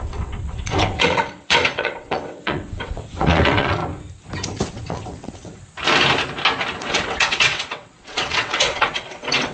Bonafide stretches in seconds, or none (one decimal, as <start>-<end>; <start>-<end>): 3.8-4.7; 5.6-6.8